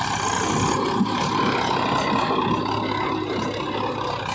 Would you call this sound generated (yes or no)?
no